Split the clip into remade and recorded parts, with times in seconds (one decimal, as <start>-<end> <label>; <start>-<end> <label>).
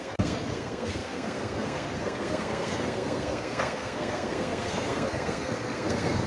0.0-6.3 remade